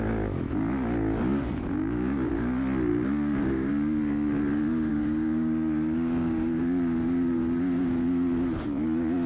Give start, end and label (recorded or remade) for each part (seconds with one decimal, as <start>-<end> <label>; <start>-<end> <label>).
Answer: 0.0-1.8 recorded; 1.8-2.3 remade; 2.3-2.9 recorded; 2.9-3.7 remade; 3.7-4.9 recorded; 4.9-6.6 remade; 6.6-9.3 recorded